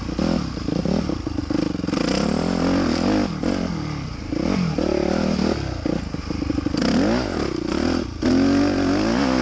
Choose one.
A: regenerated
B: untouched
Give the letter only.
B